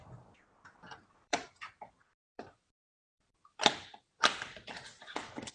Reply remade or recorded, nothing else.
remade